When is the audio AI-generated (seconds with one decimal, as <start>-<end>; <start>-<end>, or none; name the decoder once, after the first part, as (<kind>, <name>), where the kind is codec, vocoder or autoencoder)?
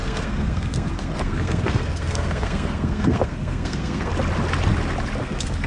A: 0.0-4.1 (codec, SNAC); 5.2-5.7